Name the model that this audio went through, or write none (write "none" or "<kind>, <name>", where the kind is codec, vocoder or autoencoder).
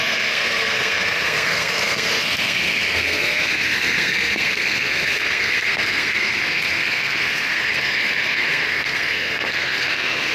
codec, SNAC